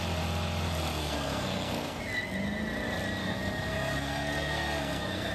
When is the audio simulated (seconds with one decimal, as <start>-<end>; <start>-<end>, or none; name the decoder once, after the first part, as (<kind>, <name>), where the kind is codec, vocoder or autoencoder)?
1.0-2.0 (codec, SNAC); 3.2-5.3